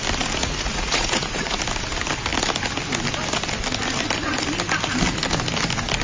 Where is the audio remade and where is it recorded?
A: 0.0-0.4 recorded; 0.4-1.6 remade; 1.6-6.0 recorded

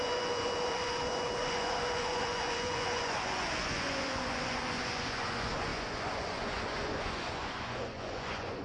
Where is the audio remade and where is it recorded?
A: 0.0-8.6 remade

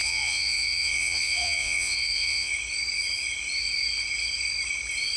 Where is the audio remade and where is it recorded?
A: 0.0-2.5 remade; 2.5-5.2 recorded

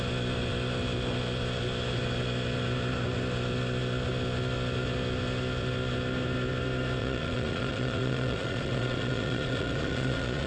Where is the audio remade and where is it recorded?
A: 0.0-7.0 recorded; 7.0-10.5 remade

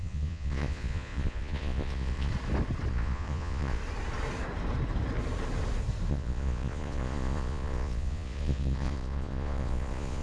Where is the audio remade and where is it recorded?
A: 0.0-2.3 remade; 2.3-2.9 recorded; 2.9-3.8 remade; 3.8-6.1 recorded; 6.1-10.2 remade

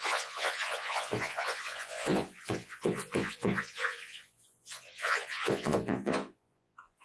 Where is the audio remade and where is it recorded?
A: 0.0-7.0 remade

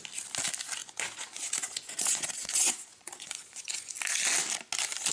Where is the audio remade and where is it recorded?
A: 0.0-0.8 recorded; 0.8-3.9 remade; 3.9-5.1 recorded

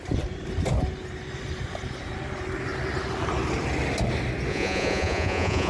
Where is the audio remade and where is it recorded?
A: 0.0-4.5 recorded; 4.5-5.7 remade